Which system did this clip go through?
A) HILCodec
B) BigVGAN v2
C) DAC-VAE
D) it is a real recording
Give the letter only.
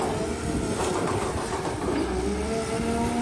D